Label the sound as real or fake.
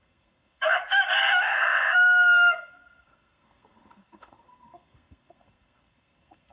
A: fake